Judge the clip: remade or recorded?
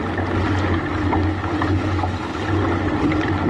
recorded